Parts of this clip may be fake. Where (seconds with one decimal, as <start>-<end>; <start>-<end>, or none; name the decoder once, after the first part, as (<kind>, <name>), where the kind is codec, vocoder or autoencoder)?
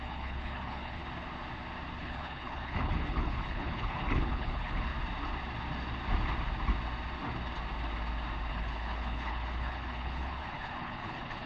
0.0-1.0 (codec, HILCodec); 2.0-4.9; 8.5-11.5